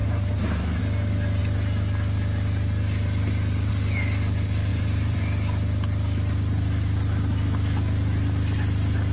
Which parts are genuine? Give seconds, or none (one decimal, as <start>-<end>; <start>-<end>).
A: 0.8-4.7; 5.2-9.1